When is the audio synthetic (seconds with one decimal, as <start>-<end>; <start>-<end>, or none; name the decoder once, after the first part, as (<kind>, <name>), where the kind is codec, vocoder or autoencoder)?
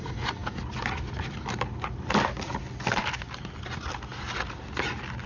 none